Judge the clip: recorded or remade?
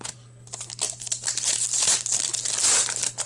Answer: recorded